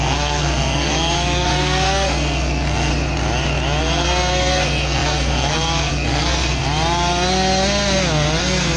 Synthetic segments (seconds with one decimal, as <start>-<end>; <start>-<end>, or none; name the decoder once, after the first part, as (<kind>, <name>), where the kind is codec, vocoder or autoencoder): 0.0-2.9 (codec, SNAC); 3.8-6.6; 8.4-8.8